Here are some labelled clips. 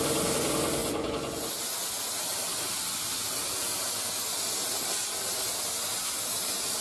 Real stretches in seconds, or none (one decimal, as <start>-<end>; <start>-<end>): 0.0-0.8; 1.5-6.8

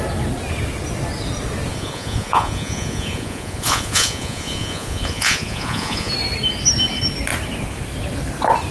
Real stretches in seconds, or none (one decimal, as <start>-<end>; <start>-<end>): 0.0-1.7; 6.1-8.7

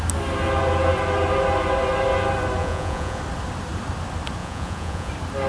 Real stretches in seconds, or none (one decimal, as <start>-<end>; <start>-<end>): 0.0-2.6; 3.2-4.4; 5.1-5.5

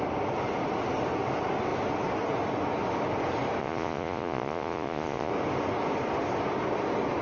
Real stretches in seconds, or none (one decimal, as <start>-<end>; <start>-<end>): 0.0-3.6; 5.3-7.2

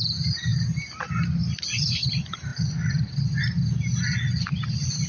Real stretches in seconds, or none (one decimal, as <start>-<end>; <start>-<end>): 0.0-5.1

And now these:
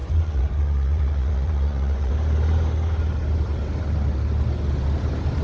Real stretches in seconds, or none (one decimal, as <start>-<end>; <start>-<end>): 2.1-5.4

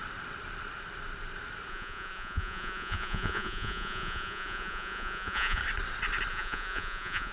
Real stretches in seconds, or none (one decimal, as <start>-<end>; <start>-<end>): 0.0-1.7; 5.6-6.3